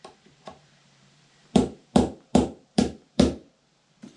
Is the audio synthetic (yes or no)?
yes